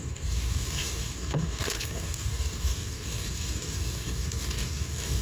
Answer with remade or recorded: remade